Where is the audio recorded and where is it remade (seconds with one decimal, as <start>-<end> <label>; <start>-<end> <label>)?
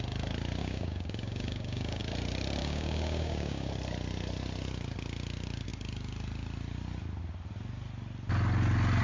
0.0-0.6 recorded; 0.6-2.0 remade; 2.0-2.6 recorded; 2.6-3.7 remade; 3.7-9.0 recorded